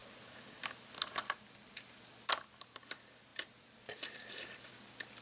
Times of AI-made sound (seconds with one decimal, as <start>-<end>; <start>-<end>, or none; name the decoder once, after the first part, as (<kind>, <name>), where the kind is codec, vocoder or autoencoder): 3.3-4.7 (vocoder, BigVGAN v2)